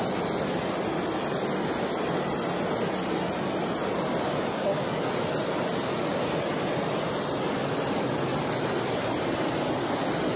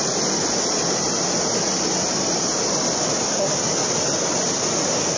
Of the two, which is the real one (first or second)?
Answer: first